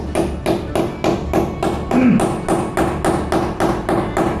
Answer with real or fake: real